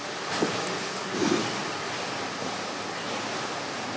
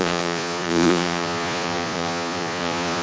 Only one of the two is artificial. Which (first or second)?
second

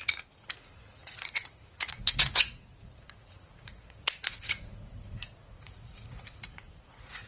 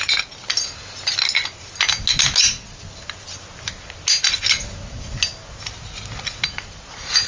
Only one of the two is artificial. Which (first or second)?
first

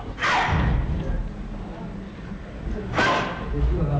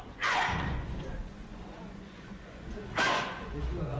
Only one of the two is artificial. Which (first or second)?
second